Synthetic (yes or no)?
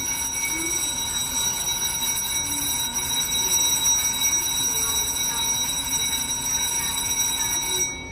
no